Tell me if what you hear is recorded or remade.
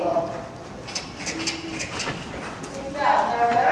recorded